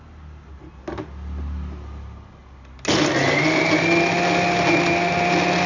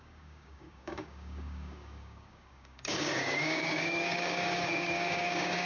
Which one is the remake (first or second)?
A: second